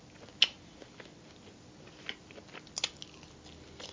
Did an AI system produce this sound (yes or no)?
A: no